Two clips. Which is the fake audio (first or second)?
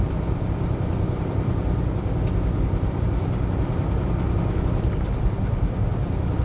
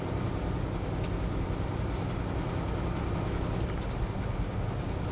first